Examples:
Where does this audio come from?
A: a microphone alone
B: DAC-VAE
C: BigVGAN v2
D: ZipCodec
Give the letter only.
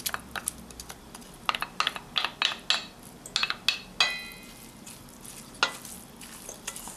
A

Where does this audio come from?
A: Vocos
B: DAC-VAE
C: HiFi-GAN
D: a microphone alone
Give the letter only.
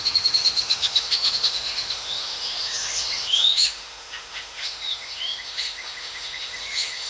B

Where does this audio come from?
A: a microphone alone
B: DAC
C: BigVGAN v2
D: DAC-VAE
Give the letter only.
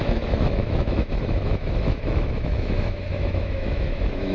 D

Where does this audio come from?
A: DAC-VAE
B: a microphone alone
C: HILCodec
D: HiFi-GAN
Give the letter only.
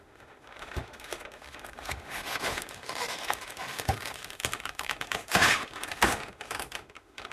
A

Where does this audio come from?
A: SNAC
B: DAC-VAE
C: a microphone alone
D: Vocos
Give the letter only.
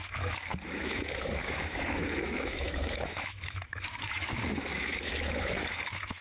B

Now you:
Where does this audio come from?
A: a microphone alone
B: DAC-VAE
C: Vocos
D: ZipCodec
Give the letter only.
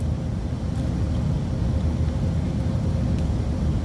A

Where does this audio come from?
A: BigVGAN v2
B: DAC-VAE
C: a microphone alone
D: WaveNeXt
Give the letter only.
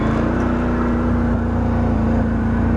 C